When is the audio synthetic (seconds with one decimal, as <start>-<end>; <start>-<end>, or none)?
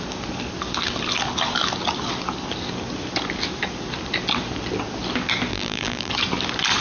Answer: 5.5-6.1